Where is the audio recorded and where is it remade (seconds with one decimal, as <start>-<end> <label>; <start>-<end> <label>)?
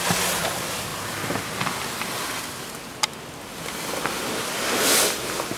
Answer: 0.0-5.6 recorded